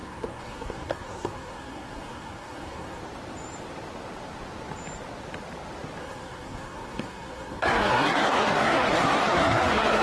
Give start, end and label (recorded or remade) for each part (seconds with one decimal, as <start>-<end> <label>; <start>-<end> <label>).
0.0-3.0 remade; 3.0-6.0 recorded; 6.0-10.0 remade

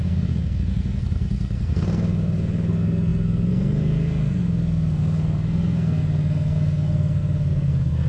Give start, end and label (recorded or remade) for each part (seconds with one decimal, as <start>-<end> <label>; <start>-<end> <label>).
0.0-8.1 remade

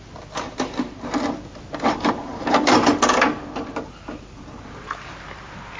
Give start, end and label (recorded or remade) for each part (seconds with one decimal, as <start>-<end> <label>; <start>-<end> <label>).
0.0-5.8 recorded

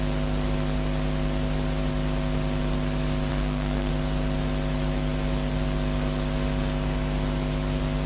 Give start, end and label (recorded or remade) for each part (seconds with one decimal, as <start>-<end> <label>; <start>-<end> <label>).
0.0-3.3 recorded; 3.3-3.9 remade; 3.9-8.1 recorded

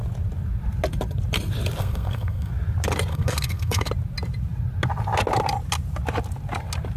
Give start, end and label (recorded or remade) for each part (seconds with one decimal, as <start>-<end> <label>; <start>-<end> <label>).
0.0-1.8 recorded; 1.8-2.5 remade; 2.5-3.1 recorded; 3.1-3.9 remade; 3.9-7.0 recorded

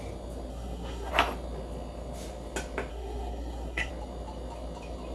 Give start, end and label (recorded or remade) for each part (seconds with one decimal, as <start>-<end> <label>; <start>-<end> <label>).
0.0-0.5 recorded; 0.5-1.1 remade; 1.1-2.9 recorded; 2.9-3.9 remade; 3.9-5.1 recorded

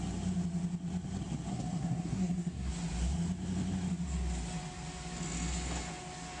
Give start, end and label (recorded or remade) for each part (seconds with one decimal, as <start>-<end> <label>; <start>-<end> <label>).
0.0-1.5 recorded; 1.5-2.7 remade; 2.7-6.4 recorded